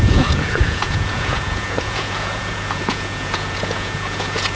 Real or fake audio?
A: fake